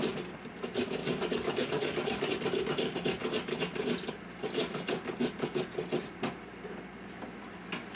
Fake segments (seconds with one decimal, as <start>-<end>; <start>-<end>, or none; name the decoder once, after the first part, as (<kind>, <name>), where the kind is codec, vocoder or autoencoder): 1.0-2.3 (codec, DAC)